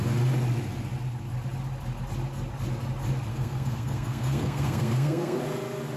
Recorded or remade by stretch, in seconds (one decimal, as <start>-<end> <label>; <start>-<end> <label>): 0.0-3.3 recorded; 3.3-5.4 remade; 5.4-6.0 recorded